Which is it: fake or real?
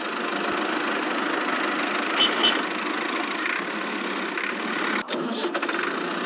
real